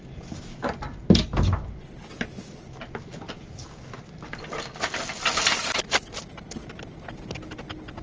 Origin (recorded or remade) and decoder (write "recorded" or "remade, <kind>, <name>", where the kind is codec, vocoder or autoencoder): recorded